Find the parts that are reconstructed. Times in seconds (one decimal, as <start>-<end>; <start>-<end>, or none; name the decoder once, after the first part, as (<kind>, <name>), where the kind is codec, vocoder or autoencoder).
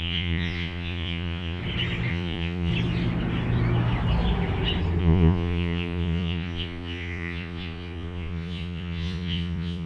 0.0-1.6 (vocoder, Vocos); 2.1-2.7; 5.0-9.9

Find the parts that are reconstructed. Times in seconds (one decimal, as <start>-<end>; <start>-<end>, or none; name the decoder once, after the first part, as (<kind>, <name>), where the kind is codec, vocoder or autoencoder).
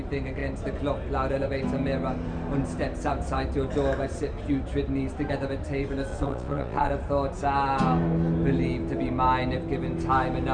6.1-6.9 (vocoder, Vocos)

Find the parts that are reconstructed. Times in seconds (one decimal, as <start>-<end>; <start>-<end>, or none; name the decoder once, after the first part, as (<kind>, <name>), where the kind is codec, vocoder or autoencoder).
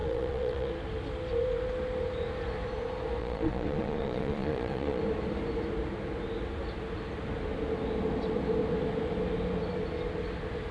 0.0-0.7 (vocoder, Vocos); 3.2-5.0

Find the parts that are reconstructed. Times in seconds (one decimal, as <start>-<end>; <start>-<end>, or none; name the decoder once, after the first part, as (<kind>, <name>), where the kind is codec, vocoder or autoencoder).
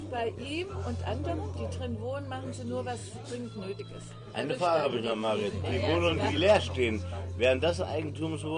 0.0-0.7 (vocoder, Vocos); 4.2-6.4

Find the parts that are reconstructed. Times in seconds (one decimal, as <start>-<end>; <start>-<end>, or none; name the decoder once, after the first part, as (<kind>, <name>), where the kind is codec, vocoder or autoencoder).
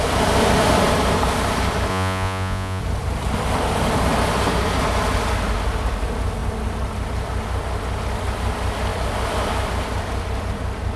1.9-2.8 (vocoder, Vocos)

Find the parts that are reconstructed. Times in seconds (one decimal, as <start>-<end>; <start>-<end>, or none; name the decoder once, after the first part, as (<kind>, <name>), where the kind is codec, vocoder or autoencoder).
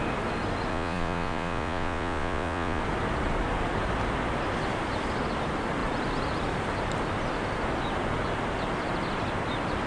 0.7-2.8 (vocoder, Vocos)